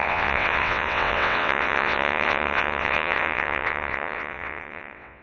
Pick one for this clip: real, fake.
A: fake